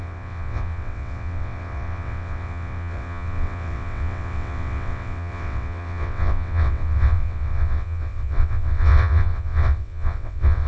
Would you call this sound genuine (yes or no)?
no